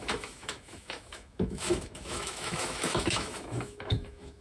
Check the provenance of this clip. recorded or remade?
remade